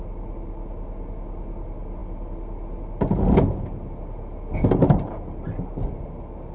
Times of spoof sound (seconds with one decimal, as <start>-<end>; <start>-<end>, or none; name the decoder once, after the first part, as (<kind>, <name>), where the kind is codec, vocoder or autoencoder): none